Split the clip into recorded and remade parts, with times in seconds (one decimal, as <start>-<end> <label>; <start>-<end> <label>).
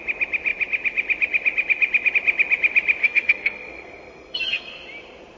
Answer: 0.0-3.0 recorded; 3.0-4.7 remade; 4.7-5.4 recorded